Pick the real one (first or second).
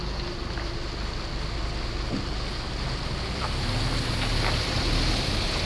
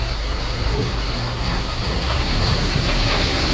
first